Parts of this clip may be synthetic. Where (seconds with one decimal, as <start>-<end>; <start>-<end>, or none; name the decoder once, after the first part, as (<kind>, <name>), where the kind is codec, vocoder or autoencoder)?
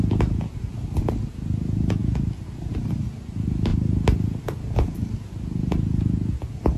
none